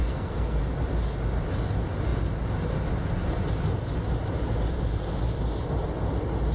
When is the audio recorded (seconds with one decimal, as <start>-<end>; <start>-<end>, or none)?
0.6-6.5